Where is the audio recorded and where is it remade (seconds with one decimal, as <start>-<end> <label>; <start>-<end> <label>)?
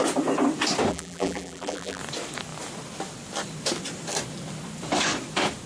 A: 0.0-0.9 recorded; 0.9-2.0 remade; 2.0-5.7 recorded